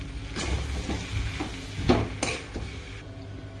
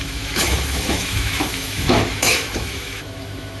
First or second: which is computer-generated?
second